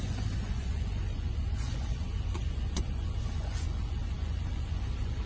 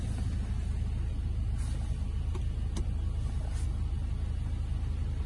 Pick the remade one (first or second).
first